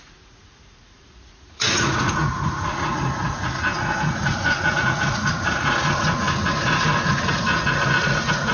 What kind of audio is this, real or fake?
fake